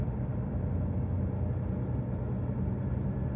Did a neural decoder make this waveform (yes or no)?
no